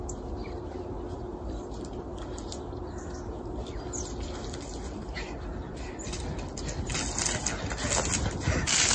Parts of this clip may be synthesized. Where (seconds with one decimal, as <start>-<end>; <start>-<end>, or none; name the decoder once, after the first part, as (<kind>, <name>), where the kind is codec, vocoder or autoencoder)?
none

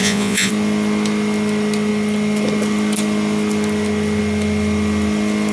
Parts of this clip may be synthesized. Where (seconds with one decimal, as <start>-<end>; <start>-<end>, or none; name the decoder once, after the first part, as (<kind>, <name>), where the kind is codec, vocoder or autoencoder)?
0.0-0.5 (vocoder, Vocos)

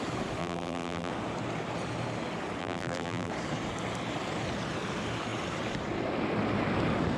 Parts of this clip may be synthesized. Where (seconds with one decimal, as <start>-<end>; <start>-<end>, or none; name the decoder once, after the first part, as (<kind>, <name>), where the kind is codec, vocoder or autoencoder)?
0.4-1.1 (vocoder, BigVGAN v2); 2.6-3.3